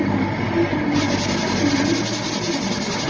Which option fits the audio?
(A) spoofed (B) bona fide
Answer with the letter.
B